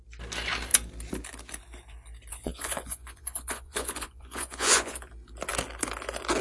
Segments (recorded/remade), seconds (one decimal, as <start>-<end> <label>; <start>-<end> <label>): 0.0-2.3 recorded; 2.3-5.1 remade; 5.1-6.4 recorded